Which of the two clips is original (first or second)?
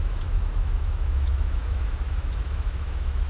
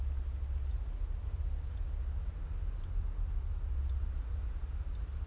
second